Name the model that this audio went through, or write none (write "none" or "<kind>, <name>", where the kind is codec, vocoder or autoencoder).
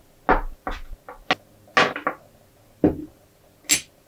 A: none